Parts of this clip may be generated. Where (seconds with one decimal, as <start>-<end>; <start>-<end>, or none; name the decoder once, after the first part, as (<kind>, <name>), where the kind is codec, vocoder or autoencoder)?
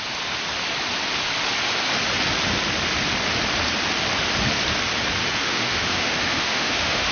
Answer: 5.4-7.1 (autoencoder, DAC-VAE)